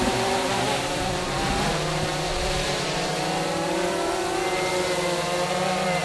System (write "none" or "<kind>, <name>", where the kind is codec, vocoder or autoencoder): vocoder, BigVGAN v2